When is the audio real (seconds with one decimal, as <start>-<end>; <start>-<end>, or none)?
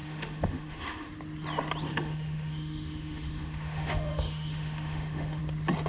1.1-1.9; 5.4-5.9